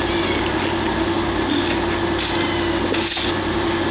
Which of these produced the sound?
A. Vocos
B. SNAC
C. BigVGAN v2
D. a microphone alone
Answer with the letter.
D